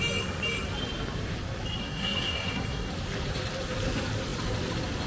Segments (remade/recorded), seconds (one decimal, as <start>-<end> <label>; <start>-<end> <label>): 0.0-1.8 recorded; 1.8-2.9 remade; 2.9-5.1 recorded